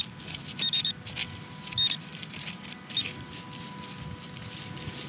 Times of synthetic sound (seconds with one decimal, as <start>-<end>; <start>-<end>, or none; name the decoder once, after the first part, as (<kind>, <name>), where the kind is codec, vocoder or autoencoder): none